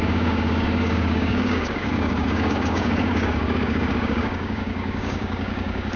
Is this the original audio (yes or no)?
no